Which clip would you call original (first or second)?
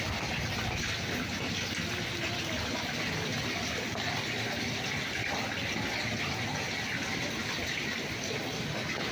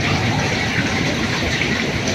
first